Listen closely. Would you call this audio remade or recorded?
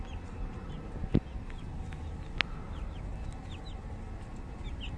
recorded